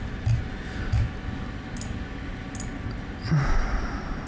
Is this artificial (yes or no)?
no